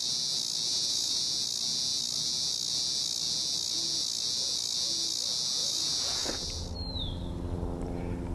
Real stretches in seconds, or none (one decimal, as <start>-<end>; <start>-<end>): 0.0-0.7; 1.2-5.6; 6.6-8.3